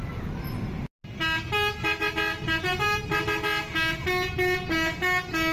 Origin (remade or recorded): recorded